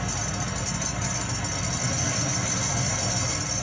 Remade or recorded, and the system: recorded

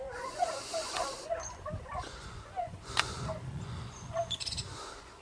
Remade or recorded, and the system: remade, vocoder, Vocos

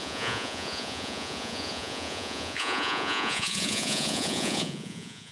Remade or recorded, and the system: remade, vocoder, Vocos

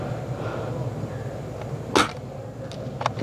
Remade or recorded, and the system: recorded